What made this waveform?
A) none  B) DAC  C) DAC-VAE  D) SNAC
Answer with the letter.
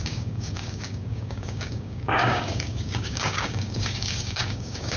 B